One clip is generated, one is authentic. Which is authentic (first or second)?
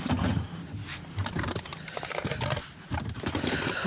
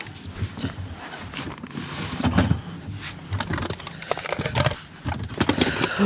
second